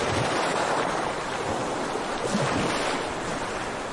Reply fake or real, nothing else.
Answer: real